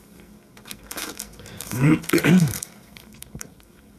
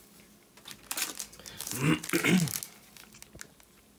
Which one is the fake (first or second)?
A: first